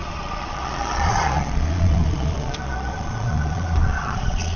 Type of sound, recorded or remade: remade